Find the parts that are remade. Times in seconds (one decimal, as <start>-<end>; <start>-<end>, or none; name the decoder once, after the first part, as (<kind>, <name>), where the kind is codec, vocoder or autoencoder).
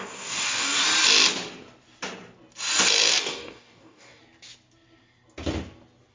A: 0.0-0.8 (codec, DAC); 3.1-4.2